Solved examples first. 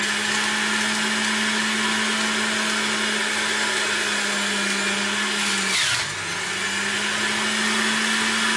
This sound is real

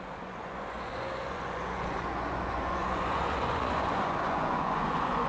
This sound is fake